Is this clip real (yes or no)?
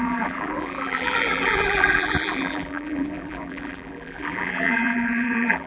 no